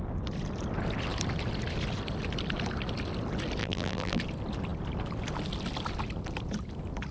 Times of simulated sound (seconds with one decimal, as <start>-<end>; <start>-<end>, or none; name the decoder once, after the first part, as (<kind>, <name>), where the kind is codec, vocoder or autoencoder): 3.6-4.2 (vocoder, BigVGAN v2)